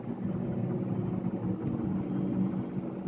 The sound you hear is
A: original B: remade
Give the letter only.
A